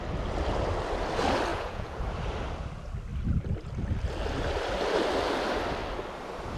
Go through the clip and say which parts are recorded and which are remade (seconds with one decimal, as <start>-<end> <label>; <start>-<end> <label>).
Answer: 0.0-1.5 recorded; 1.5-2.0 remade; 2.0-6.6 recorded